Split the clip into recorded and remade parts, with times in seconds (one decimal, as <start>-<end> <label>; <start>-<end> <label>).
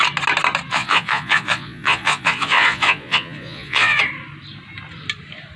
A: 0.0-0.7 recorded; 0.7-4.0 remade; 4.0-5.6 recorded